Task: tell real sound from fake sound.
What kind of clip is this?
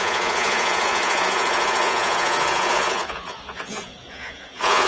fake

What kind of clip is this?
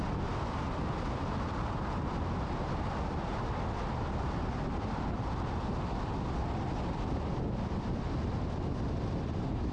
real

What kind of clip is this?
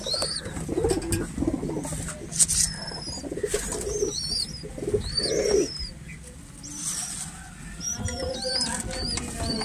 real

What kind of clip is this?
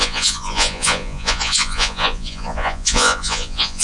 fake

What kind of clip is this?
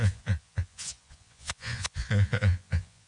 fake